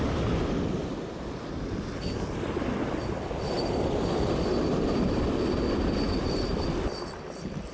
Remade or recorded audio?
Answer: recorded